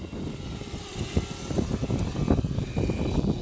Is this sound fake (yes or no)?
no